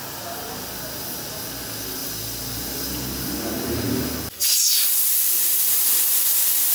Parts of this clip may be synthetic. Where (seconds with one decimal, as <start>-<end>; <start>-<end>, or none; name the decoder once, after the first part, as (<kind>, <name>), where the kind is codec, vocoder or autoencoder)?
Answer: 2.0-2.9 (vocoder, BigVGAN v2)